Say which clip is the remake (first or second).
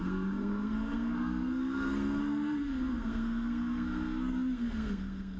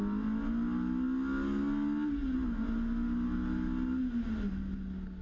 first